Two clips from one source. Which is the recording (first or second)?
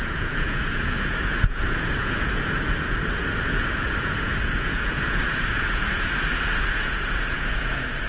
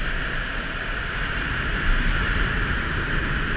second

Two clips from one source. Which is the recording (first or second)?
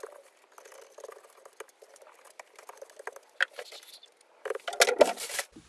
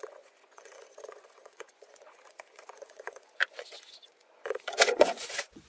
first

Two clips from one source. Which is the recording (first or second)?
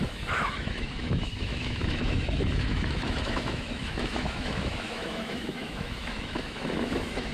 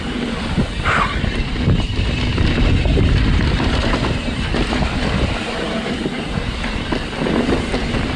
second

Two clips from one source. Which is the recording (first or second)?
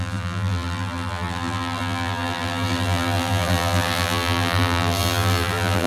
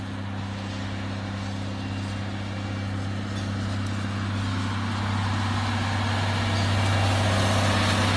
second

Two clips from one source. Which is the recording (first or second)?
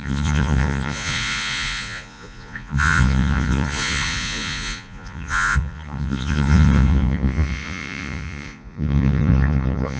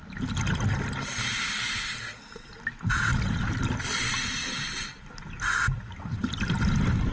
second